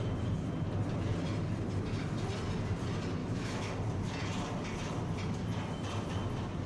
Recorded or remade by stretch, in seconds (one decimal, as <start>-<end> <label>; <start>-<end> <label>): 0.0-3.2 recorded; 3.2-3.7 remade; 3.7-6.7 recorded